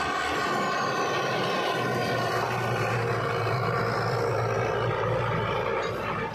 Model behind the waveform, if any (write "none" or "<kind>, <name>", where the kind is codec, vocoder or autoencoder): none